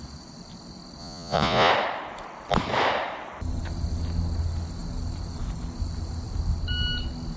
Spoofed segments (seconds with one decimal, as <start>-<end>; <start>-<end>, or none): 1.0-1.7